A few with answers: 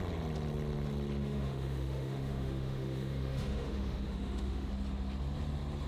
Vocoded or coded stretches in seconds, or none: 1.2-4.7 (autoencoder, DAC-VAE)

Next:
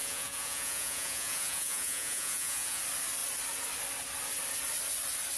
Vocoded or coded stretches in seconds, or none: 0.0-2.8 (vocoder, Vocos)

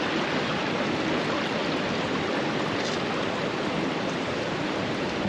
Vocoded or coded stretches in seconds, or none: 1.6-4.8 (vocoder, BigVGAN v2)

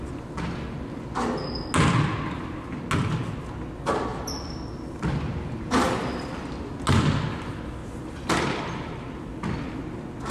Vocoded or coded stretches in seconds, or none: 4.1-6.1 (vocoder, BigVGAN v2); 7.8-9.5